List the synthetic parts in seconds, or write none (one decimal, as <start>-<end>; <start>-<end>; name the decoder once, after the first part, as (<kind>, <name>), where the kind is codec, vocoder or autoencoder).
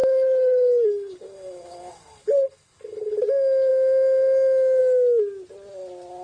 0.0-3.2 (codec, HILCodec)